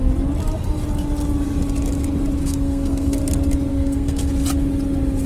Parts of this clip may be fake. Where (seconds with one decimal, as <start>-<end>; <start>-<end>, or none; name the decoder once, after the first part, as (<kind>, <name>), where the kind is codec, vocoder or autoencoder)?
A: 2.4-3.2 (codec, SNAC); 3.7-4.3